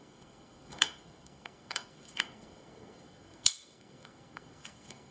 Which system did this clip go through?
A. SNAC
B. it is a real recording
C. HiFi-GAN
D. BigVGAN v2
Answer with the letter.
A